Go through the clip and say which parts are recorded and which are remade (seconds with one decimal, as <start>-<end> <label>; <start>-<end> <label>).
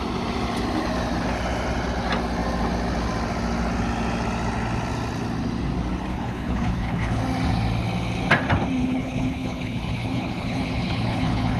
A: 0.0-6.1 recorded; 6.1-7.2 remade; 7.2-8.8 recorded; 8.8-11.6 remade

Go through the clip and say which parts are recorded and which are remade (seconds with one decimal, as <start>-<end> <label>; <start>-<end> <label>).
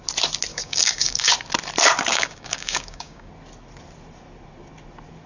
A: 0.0-0.5 recorded; 0.5-1.3 remade; 1.3-2.1 recorded; 2.1-3.3 remade; 3.3-5.3 recorded